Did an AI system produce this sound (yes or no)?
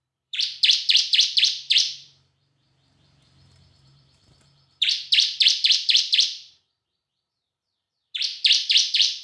yes